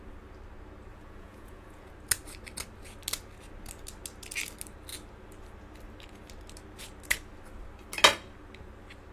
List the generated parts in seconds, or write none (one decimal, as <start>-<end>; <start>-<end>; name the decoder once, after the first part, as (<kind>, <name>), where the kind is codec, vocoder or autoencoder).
0.9-1.9 (vocoder, Vocos)